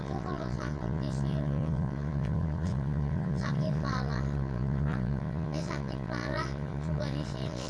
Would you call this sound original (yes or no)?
no